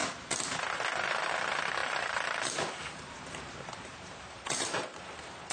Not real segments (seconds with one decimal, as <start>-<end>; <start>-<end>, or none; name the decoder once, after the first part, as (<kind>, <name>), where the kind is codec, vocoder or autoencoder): 1.8-5.1 (vocoder, BigVGAN v2)